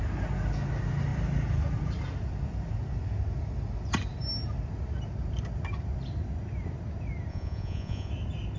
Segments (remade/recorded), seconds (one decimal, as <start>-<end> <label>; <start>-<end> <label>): 0.0-7.3 recorded; 7.3-8.1 remade; 8.1-8.6 recorded